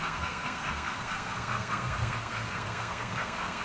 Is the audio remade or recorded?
remade